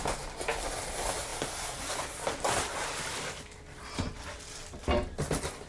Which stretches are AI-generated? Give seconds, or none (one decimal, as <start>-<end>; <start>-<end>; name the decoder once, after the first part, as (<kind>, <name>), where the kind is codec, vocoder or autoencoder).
none